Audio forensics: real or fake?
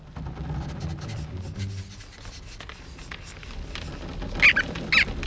real